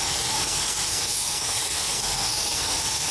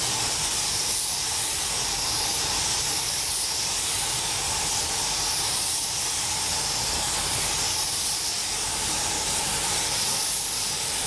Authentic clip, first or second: second